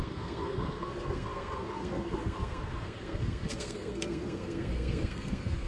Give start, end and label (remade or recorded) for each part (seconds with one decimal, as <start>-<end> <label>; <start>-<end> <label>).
0.0-5.7 remade